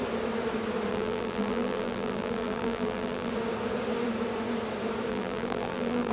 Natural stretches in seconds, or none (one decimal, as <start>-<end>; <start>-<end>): 0.0-0.9; 3.3-5.1